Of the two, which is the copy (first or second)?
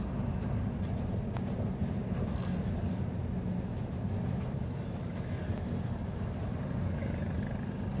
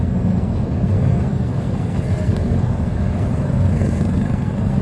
second